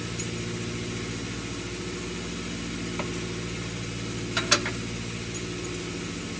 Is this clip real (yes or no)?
yes